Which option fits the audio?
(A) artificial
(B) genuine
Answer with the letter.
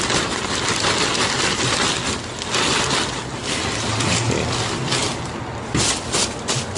B